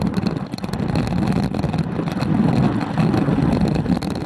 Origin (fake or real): real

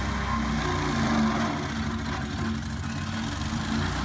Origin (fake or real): real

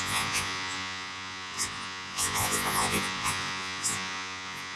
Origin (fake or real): fake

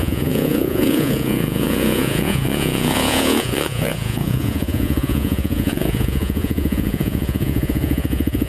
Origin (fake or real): fake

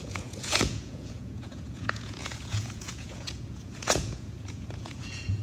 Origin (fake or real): fake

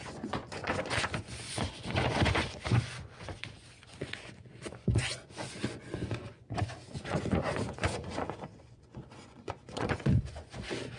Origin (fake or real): fake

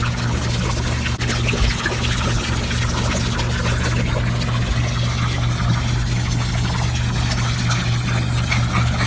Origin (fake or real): real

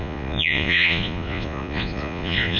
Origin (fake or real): fake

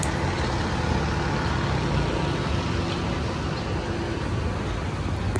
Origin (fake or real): real